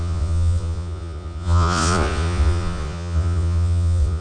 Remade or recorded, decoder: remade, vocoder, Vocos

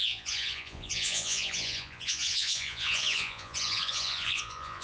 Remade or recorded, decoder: remade, vocoder, Vocos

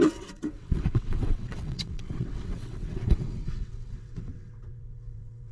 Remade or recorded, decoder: remade, vocoder, WaveNeXt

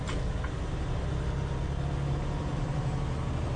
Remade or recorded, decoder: recorded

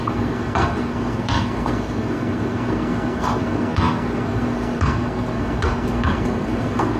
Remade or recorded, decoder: remade, codec, SNAC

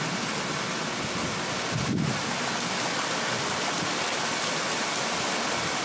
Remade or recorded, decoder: recorded